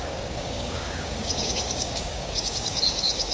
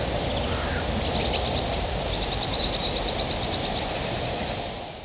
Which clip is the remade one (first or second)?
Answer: first